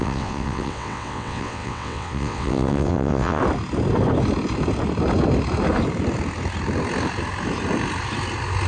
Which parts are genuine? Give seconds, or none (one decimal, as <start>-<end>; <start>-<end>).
3.4-8.7